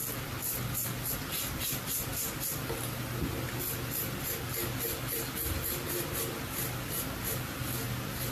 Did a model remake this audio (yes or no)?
no